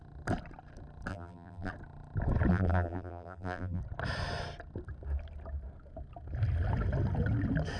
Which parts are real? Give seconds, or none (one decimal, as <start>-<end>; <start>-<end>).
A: 0.0-1.1; 1.7-2.5; 3.8-7.8